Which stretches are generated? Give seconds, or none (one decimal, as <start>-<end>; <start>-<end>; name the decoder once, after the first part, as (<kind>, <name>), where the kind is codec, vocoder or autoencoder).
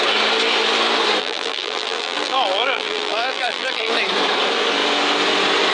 1.2-3.9 (vocoder, BigVGAN v2)